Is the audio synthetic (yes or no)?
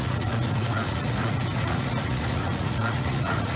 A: yes